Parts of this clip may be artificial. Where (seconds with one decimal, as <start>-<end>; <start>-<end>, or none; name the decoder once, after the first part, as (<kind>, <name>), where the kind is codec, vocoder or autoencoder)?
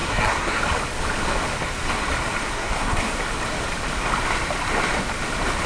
0.0-0.6 (codec, SNAC); 2.4-3.2